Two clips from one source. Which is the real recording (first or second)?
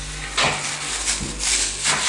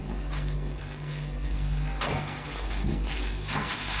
first